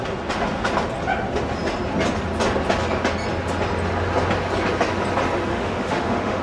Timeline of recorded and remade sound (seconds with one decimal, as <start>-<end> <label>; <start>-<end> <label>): 0.0-5.5 recorded; 5.5-6.4 remade